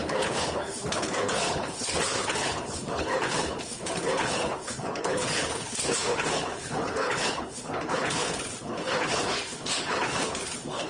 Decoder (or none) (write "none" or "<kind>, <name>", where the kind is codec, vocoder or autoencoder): codec, HILCodec